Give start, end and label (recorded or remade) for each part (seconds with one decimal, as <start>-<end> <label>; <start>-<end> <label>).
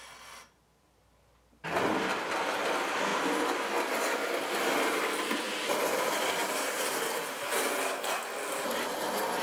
0.0-9.4 recorded